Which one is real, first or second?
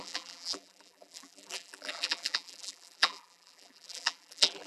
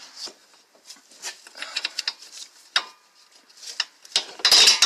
second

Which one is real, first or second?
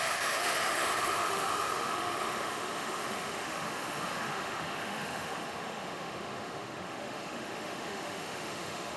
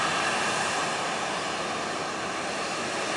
second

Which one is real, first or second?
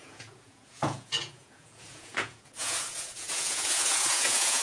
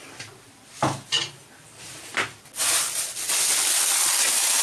second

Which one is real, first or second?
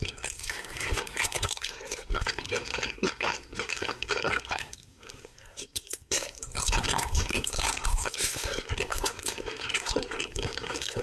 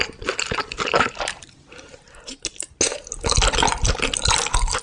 second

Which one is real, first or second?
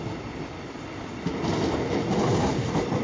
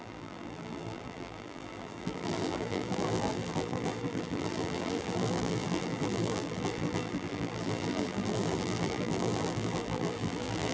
first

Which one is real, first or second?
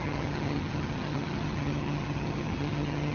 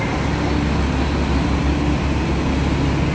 second